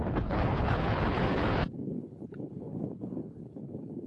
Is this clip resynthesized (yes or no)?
yes